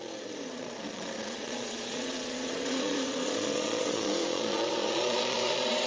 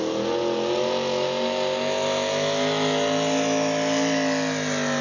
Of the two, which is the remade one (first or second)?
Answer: first